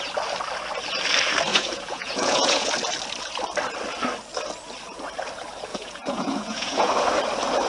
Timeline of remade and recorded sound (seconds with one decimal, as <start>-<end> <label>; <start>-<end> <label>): 0.0-1.5 recorded; 1.5-2.7 remade; 2.7-5.7 recorded; 5.7-6.9 remade; 6.9-7.7 recorded